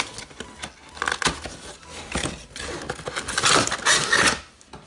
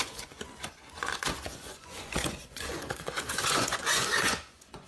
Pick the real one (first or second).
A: first